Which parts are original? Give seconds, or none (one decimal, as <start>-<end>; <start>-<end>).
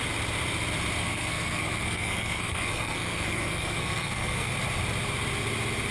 0.0-1.0; 4.5-5.9